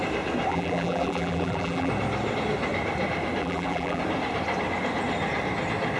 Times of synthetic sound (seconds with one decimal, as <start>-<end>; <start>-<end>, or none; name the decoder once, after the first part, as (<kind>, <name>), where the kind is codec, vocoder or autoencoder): 0.5-1.9 (vocoder, BigVGAN v2); 3.4-4.0